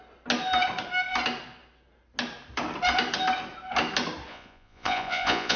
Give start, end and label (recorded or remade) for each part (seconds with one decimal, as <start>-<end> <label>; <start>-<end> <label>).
0.0-4.3 recorded; 4.3-5.6 remade